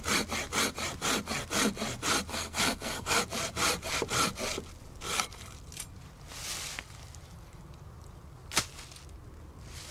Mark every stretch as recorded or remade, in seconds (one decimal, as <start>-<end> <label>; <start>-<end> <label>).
0.0-2.3 recorded; 2.3-3.2 remade; 3.2-9.9 recorded